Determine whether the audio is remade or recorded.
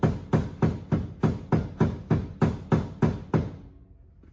recorded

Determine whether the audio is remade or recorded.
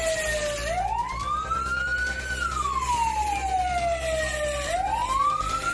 recorded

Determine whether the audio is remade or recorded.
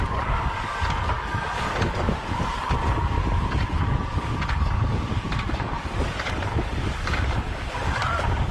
remade